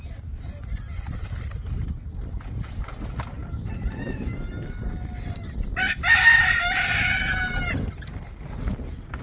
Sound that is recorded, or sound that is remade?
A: recorded